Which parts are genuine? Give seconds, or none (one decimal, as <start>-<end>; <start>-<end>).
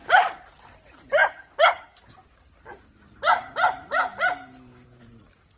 0.0-0.5